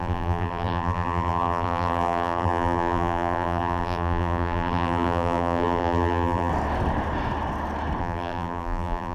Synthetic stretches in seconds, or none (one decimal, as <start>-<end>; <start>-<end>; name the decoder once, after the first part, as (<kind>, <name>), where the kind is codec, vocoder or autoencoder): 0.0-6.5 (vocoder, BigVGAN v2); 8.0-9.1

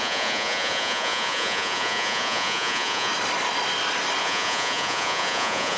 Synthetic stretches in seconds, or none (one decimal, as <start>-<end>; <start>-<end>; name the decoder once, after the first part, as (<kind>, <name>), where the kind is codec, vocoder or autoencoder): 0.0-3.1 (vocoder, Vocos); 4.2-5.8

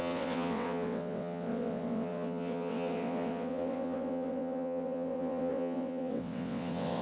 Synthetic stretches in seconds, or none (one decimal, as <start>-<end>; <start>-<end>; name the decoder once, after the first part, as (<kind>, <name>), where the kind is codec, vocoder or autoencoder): 0.0-7.0 (vocoder, WaveNeXt)

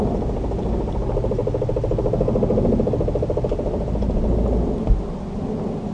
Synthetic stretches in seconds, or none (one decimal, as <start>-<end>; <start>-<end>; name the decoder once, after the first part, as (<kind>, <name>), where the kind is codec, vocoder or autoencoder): none